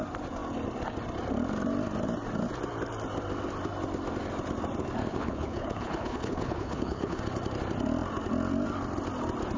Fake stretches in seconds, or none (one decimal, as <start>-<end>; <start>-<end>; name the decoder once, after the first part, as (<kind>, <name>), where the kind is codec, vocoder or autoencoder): 5.1-7.2 (codec, HILCodec)